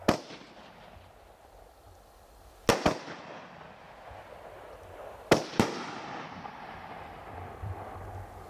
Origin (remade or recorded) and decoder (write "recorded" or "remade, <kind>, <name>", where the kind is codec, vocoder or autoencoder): recorded